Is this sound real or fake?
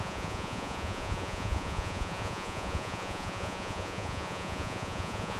fake